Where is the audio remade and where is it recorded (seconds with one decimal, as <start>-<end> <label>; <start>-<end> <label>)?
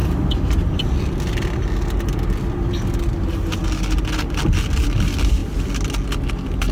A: 0.0-6.7 recorded